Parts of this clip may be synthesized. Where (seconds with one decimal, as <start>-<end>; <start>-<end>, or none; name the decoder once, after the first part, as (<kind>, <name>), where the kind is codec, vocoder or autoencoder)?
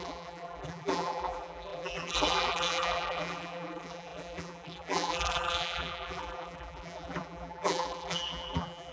0.0-8.9 (vocoder, BigVGAN v2)